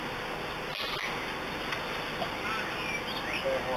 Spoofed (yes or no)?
no